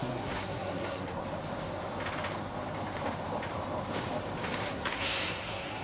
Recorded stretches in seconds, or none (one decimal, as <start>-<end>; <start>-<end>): 1.2-4.6